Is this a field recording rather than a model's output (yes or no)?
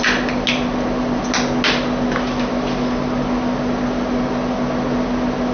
yes